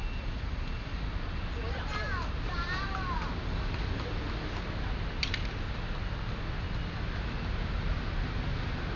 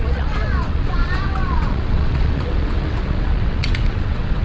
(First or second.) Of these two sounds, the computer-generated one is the second